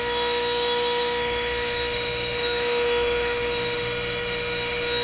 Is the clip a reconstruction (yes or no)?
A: yes